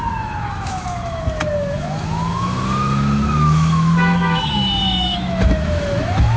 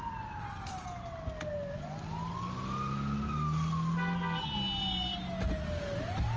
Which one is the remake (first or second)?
first